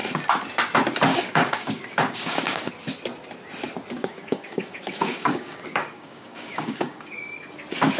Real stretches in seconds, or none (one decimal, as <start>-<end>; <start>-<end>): 0.0-1.1; 2.7-4.0; 7.2-8.0

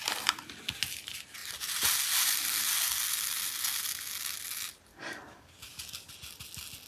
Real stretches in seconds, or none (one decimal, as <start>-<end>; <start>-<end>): 0.0-4.9; 6.1-6.9

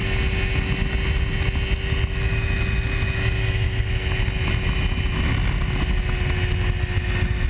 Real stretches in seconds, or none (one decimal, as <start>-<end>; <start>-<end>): 0.0-7.5

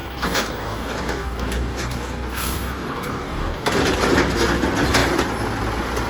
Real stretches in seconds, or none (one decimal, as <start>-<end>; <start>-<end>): 3.7-6.1

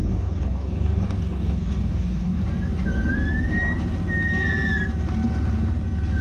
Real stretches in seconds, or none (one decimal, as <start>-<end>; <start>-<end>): 2.4-6.2